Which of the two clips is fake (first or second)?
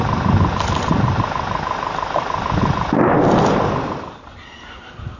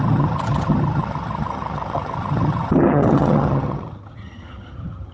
second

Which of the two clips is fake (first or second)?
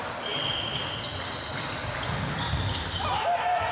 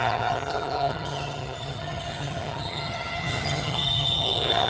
second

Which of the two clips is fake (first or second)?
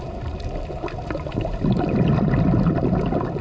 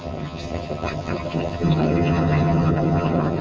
second